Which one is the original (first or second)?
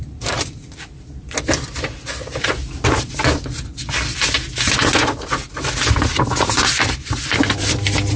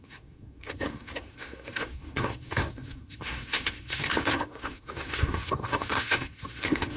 first